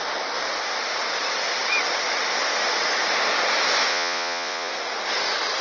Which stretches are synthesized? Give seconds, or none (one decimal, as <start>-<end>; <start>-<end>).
3.9-4.7

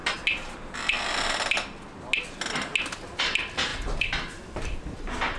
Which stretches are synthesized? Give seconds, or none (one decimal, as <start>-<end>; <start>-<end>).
none

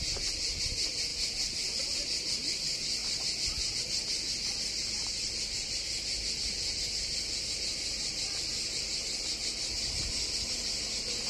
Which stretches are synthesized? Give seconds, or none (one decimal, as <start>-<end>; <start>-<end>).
none

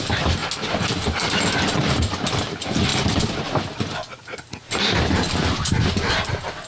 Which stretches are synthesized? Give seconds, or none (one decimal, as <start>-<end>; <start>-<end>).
none

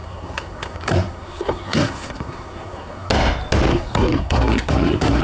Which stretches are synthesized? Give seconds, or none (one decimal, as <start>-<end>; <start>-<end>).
0.0-3.1; 3.7-5.2

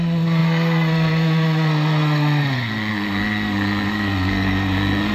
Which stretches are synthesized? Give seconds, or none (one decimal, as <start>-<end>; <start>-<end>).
0.0-5.1

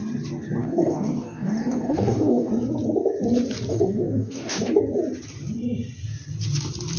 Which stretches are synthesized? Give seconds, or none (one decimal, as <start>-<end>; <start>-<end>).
0.6-2.5; 3.7-4.8